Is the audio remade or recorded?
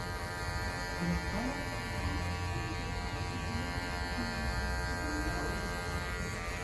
recorded